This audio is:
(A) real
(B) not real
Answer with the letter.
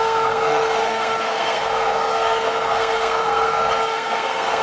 B